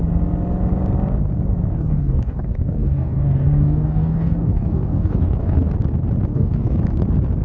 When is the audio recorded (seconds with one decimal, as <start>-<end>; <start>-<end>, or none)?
0.0-1.7; 5.7-6.3; 6.8-7.4